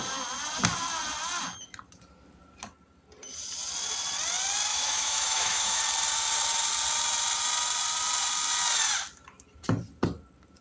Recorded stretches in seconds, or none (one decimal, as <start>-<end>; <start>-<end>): 0.0-4.7; 5.8-10.6